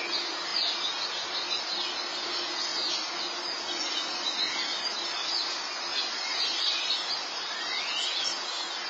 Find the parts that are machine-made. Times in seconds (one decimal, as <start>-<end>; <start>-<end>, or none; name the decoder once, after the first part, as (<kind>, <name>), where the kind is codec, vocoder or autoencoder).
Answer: 6.3-6.9 (vocoder, BigVGAN v2)